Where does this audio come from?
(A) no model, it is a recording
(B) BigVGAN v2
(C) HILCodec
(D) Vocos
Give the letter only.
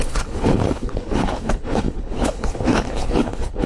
C